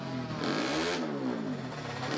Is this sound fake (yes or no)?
no